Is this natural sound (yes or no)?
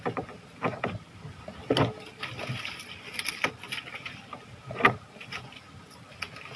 yes